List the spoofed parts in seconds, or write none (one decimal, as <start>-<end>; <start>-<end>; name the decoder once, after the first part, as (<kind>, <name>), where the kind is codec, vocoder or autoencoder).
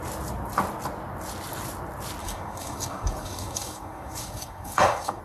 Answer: 2.2-5.2 (codec, DAC)